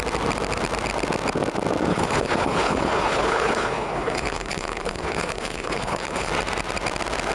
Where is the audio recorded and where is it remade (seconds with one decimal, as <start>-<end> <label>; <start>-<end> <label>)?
0.0-1.9 recorded; 1.9-6.3 remade; 6.3-7.3 recorded